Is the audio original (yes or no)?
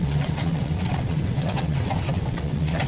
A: no